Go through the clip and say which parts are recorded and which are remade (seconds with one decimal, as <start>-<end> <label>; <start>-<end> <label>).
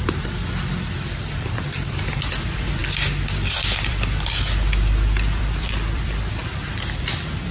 0.0-2.8 remade; 2.8-3.5 recorded; 3.5-7.5 remade